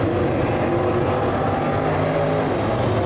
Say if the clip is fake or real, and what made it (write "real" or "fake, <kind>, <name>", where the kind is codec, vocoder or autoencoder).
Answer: fake, vocoder, BigVGAN v2